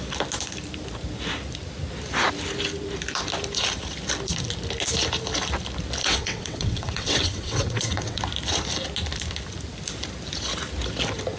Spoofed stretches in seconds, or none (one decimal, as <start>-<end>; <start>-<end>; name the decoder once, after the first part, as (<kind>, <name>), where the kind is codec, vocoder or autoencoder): 6.0-8.2 (vocoder, WaveNeXt)